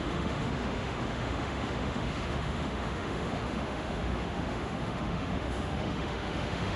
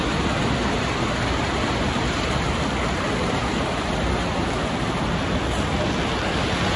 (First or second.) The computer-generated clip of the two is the first